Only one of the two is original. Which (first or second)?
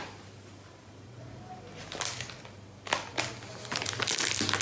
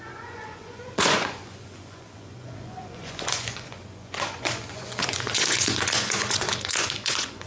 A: first